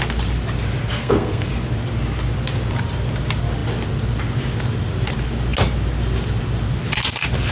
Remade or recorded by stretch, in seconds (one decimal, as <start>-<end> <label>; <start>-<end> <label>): 0.0-1.0 recorded; 1.0-1.5 remade; 1.5-7.5 recorded